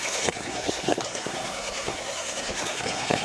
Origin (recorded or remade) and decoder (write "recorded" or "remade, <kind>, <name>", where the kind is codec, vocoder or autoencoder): remade, codec, SNAC